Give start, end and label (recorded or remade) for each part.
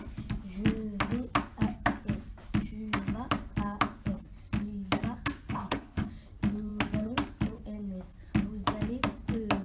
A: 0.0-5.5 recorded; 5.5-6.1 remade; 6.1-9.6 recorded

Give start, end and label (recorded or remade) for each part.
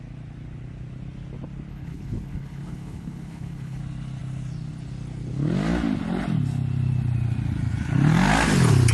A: 0.0-1.7 recorded; 1.7-3.8 remade; 3.8-8.9 recorded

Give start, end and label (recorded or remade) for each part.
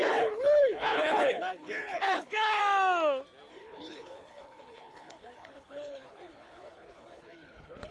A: 0.0-2.6 remade; 2.6-3.5 recorded; 3.5-7.9 remade